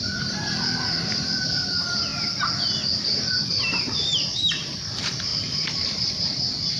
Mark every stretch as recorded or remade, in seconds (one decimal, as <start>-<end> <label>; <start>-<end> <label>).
0.0-0.4 remade; 0.4-1.7 recorded; 1.7-2.1 remade; 2.1-2.9 recorded; 2.9-6.8 remade